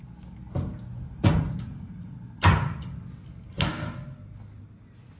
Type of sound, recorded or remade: recorded